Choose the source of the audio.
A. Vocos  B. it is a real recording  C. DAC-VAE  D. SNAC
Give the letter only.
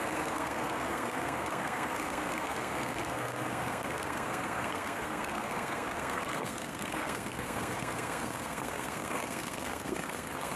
D